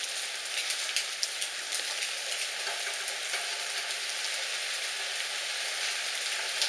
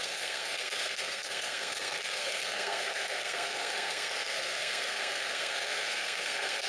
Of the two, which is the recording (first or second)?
first